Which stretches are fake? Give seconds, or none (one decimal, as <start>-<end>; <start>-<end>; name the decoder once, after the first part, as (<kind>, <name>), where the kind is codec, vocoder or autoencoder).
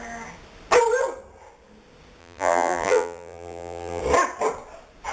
2.2-4.0 (vocoder, BigVGAN v2)